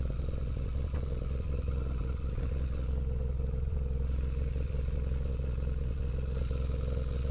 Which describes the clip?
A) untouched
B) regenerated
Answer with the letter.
B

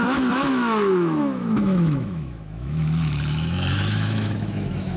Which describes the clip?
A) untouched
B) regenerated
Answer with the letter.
B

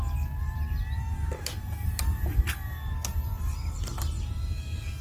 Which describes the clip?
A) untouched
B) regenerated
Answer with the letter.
A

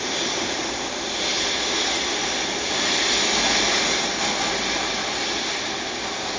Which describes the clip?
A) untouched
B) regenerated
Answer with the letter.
A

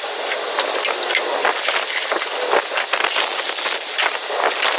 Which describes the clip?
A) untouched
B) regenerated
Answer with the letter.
A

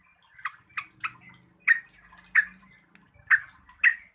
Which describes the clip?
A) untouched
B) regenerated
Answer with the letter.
A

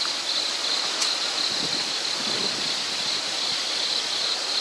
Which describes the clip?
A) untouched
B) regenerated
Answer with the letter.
A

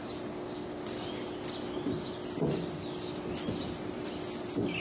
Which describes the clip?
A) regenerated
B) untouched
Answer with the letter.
B